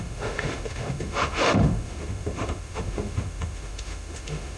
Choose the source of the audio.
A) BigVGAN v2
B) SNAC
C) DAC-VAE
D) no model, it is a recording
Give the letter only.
C